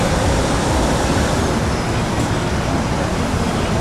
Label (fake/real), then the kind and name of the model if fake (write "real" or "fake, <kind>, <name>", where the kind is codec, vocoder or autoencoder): real